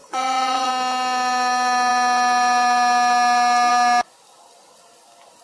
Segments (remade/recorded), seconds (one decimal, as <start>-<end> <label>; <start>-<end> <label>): 0.0-0.7 remade; 0.7-5.4 recorded